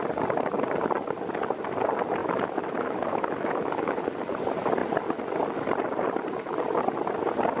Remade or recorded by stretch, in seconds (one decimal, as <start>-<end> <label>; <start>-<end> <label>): 0.0-2.2 recorded; 2.2-4.0 remade; 4.0-7.6 recorded